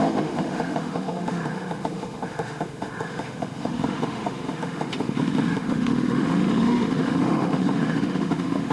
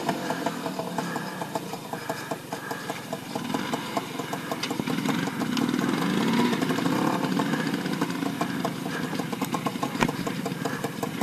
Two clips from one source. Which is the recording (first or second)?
second